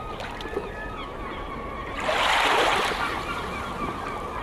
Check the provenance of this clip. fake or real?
real